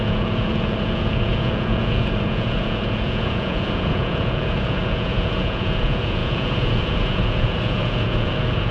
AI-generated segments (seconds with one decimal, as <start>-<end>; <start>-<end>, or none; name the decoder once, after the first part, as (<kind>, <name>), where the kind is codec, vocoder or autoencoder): 0.0-8.7 (vocoder, Vocos)